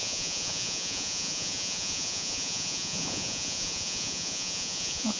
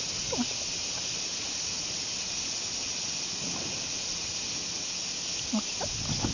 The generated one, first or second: first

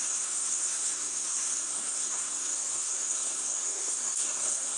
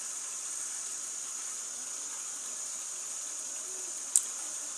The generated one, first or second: first